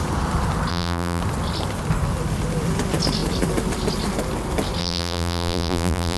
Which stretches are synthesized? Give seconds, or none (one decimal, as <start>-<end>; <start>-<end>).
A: 0.7-1.2; 4.8-6.2